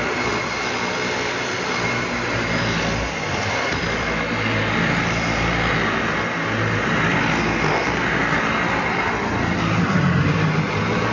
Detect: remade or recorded recorded